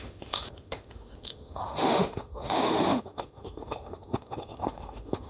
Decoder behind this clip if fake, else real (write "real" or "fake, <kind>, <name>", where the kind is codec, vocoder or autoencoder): fake, autoencoder, DAC-VAE